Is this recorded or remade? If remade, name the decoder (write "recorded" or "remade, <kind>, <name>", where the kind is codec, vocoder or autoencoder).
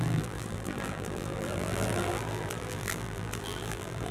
remade, vocoder, BigVGAN v2